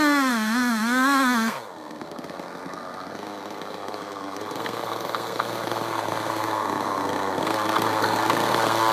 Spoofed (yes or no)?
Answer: yes